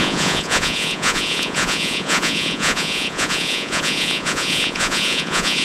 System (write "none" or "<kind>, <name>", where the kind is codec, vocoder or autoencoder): vocoder, Vocos